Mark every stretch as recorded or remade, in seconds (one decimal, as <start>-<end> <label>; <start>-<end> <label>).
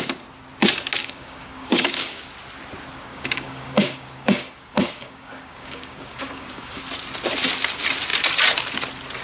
0.0-1.0 recorded; 1.0-2.3 remade; 2.3-3.1 recorded; 3.1-6.8 remade; 6.8-9.2 recorded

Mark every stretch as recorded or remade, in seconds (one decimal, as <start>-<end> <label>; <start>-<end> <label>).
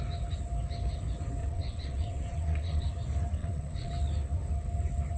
0.0-1.4 recorded; 1.4-2.9 remade; 2.9-3.4 recorded; 3.4-3.9 remade; 3.9-5.2 recorded